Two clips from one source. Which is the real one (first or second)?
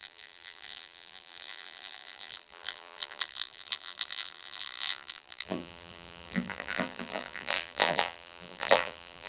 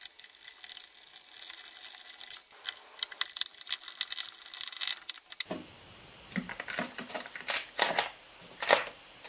second